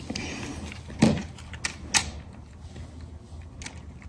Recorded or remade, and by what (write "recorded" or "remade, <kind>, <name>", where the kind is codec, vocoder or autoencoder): recorded